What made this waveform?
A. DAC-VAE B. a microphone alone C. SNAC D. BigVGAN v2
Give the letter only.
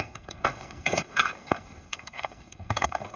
C